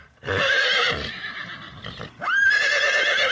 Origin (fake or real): fake